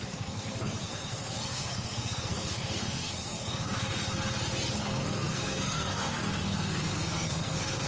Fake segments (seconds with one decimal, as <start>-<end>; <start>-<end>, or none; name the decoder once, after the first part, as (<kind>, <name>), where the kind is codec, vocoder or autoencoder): 0.0-3.9 (codec, SNAC); 4.8-7.9